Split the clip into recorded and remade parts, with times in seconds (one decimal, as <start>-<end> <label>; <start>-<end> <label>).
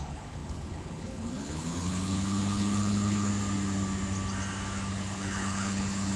0.0-3.3 remade; 3.3-4.9 recorded; 4.9-6.2 remade